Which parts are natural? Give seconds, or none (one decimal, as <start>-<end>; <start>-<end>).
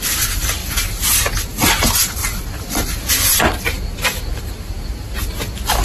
0.0-0.6; 1.3-2.2; 4.4-5.8